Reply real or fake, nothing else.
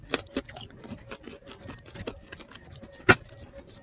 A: real